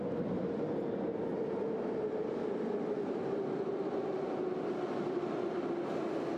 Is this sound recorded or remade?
recorded